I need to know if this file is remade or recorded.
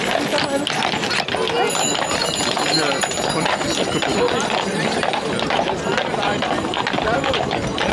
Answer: recorded